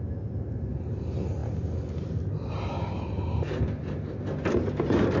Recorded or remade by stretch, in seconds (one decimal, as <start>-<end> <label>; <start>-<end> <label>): 0.0-5.2 recorded